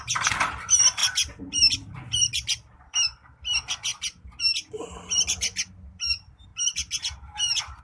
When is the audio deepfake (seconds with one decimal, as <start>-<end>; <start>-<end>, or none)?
0.0-1.0; 1.7-3.9; 4.4-6.5; 7.0-7.8